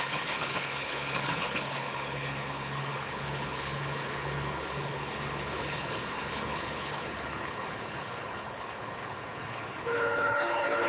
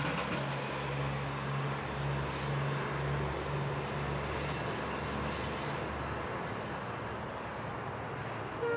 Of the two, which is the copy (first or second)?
first